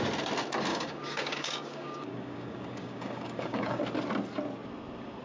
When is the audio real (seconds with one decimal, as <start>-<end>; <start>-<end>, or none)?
0.0-0.7; 3.8-5.2